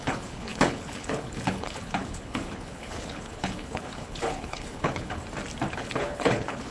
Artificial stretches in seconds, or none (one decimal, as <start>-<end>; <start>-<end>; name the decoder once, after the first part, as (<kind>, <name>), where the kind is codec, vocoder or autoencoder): 0.0-5.2 (codec, HILCodec); 5.7-6.7